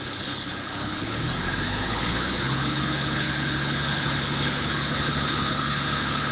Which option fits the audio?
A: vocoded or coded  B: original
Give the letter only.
A